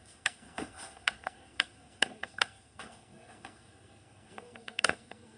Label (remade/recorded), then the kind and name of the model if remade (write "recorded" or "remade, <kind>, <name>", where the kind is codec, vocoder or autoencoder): remade, codec, SNAC